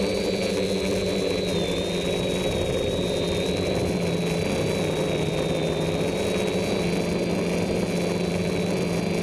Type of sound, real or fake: real